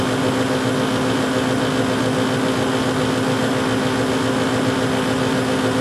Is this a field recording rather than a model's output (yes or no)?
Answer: yes